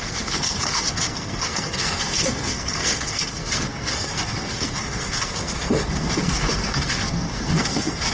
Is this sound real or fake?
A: fake